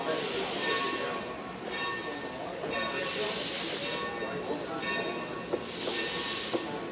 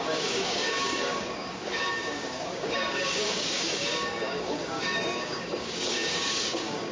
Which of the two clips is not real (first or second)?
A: second